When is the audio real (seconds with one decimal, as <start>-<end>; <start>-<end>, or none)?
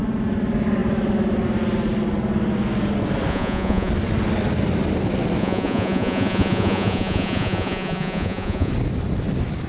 0.0-3.3; 3.9-5.4; 8.7-9.7